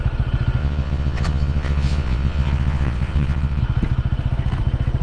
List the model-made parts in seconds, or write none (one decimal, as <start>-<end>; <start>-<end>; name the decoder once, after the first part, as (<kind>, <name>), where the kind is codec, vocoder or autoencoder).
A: 0.6-3.6 (vocoder, Vocos)